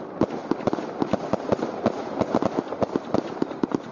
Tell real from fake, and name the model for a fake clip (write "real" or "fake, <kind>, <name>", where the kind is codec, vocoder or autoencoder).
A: real